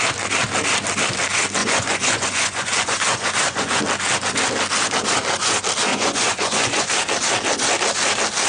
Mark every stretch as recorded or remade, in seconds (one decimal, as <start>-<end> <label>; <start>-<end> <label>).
0.0-1.6 recorded; 1.6-3.8 remade; 3.8-5.9 recorded; 5.9-6.9 remade; 6.9-8.5 recorded